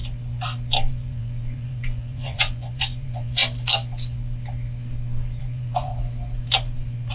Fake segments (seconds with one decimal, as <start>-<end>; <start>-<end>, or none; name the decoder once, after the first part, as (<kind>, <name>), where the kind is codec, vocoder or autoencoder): 0.9-3.4 (vocoder, Vocos); 5.4-5.9

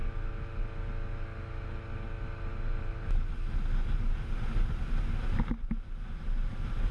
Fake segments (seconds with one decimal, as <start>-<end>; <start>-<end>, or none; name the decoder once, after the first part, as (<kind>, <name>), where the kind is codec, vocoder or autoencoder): none

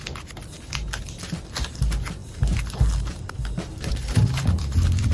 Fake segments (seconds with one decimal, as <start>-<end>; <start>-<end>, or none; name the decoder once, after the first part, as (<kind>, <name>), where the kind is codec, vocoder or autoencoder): 2.2-5.1 (vocoder, BigVGAN v2)

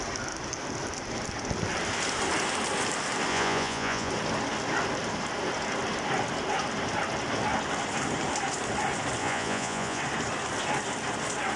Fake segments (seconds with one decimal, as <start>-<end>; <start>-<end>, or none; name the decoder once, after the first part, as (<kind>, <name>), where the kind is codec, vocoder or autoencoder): 3.3-4.1 (vocoder, Vocos); 9.2-10.0

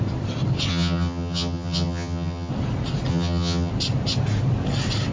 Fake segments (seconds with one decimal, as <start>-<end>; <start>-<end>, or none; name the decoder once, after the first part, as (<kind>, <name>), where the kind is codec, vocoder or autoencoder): 0.7-2.5 (vocoder, HiFi-GAN); 3.1-3.7